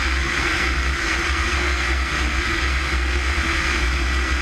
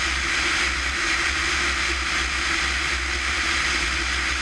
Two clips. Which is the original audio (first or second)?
second